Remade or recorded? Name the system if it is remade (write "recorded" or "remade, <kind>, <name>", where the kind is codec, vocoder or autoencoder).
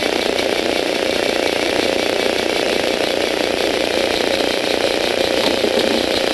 remade, vocoder, BigVGAN v2